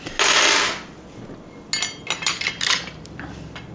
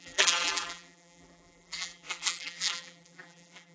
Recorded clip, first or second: first